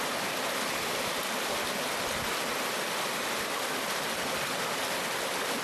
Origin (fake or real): real